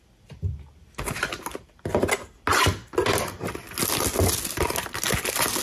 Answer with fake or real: real